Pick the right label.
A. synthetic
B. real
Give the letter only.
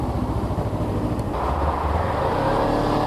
B